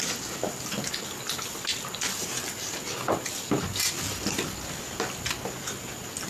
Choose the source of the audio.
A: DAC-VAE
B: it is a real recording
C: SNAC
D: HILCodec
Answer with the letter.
B